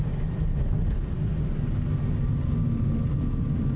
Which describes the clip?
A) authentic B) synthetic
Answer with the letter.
A